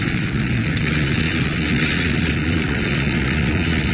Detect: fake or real fake